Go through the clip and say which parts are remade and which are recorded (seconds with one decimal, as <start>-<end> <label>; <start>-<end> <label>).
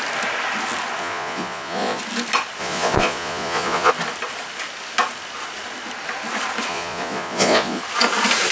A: 0.0-1.0 recorded; 1.0-2.0 remade; 2.0-2.6 recorded; 2.6-3.9 remade; 3.9-6.7 recorded; 6.7-7.8 remade; 7.8-8.5 recorded